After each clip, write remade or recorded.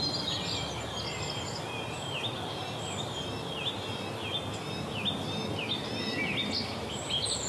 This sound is recorded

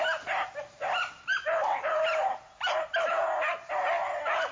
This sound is recorded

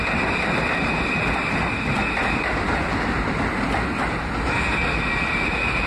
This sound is recorded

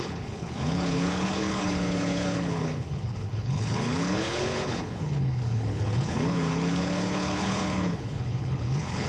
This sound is remade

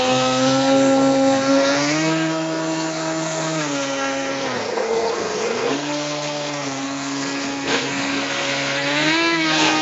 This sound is remade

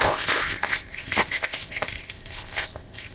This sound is remade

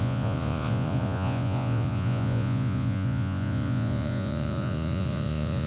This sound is remade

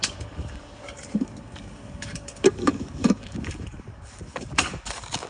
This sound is remade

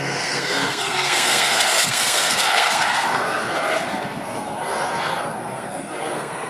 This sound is remade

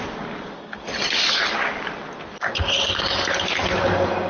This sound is recorded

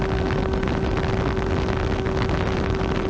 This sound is recorded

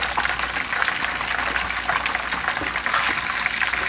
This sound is recorded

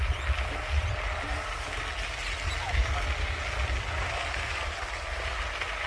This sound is recorded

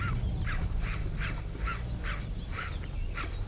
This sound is recorded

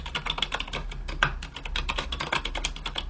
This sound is recorded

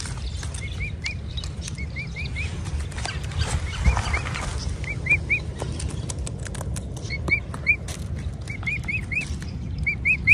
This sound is recorded